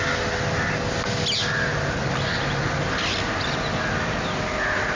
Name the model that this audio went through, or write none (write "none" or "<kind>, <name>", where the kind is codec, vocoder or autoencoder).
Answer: none